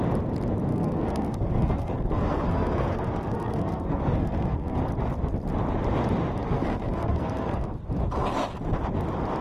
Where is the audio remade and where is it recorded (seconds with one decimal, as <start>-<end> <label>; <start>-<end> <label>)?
0.0-0.7 recorded; 0.7-4.8 remade; 4.8-6.4 recorded; 6.4-7.7 remade; 7.7-9.4 recorded